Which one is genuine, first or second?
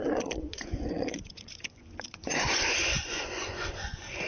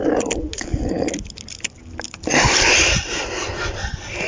second